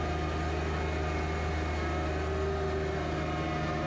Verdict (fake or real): real